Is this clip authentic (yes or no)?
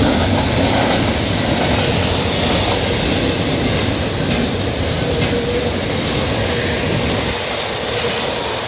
yes